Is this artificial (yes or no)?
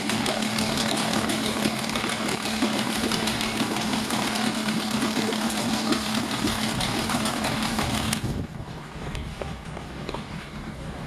yes